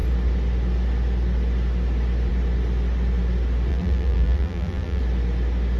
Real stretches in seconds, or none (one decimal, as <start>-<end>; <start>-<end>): 0.0-3.7; 5.0-5.8

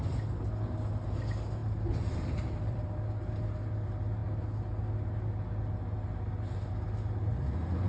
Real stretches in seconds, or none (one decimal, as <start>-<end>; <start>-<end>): 0.0-1.6; 2.9-7.9

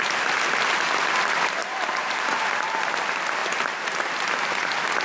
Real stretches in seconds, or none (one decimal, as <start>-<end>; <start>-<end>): 0.0-1.6; 2.4-5.0

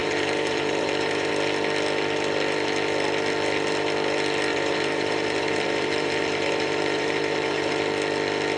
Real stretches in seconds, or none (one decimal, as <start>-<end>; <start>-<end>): 1.3-4.5; 7.8-8.6

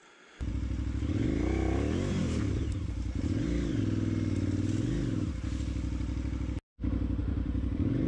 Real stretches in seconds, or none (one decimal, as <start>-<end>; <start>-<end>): 0.0-2.2; 3.8-7.2

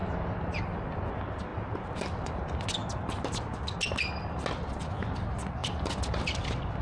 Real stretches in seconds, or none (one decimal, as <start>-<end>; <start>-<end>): 0.0-1.5; 2.3-5.6